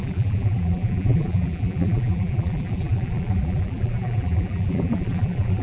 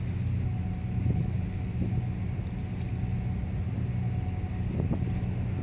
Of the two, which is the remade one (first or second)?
first